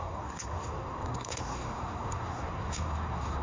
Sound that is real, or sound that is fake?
fake